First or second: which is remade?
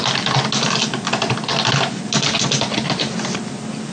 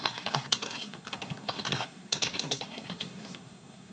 second